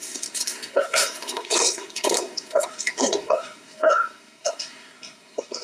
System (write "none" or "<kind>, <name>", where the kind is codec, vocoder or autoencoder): codec, SNAC